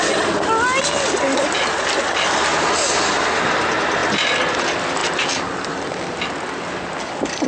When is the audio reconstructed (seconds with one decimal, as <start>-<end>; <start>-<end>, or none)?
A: none